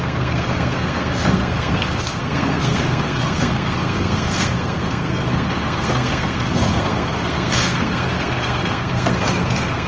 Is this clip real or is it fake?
fake